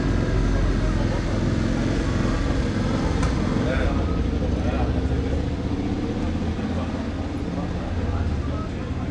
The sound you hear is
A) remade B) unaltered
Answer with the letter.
B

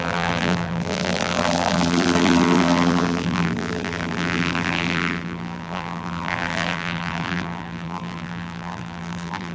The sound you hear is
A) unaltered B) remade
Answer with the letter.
B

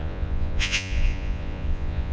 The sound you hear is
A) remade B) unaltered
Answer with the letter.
A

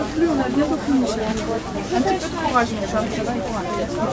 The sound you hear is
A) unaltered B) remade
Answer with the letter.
A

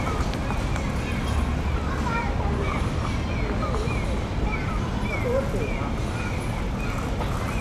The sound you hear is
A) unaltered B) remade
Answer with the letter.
A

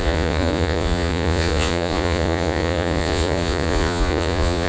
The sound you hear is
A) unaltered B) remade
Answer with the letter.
B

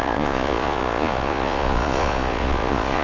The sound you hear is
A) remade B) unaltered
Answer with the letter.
A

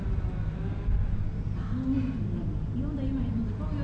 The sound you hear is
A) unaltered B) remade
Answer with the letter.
A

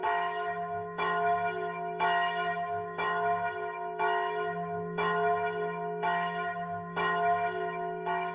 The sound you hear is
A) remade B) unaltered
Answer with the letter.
A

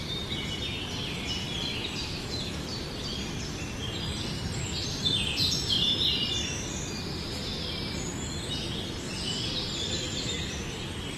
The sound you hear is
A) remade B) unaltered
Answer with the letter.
A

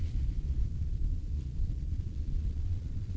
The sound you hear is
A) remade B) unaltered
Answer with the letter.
A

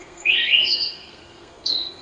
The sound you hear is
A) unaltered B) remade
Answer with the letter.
B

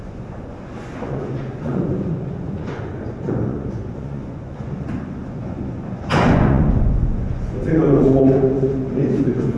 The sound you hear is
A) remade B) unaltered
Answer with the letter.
A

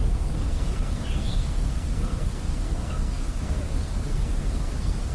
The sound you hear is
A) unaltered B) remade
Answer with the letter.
B